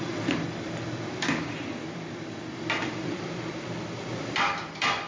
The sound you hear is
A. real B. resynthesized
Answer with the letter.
B